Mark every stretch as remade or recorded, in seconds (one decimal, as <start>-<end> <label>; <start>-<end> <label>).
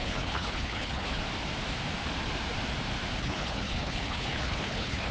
0.0-1.2 remade; 1.2-3.2 recorded; 3.2-5.1 remade